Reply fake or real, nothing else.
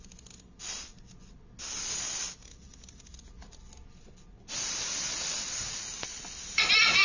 real